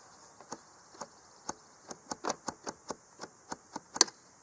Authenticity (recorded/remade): recorded